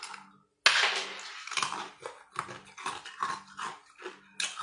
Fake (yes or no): no